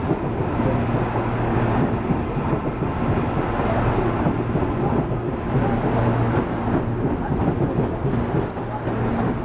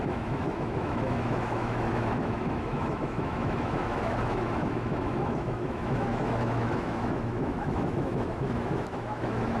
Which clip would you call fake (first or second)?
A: second